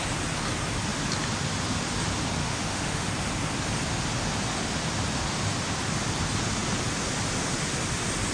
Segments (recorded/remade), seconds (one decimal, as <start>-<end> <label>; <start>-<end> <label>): 0.0-2.4 recorded; 2.4-3.1 remade; 3.1-8.3 recorded